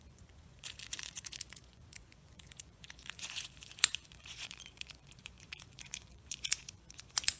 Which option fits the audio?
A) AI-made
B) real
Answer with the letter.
A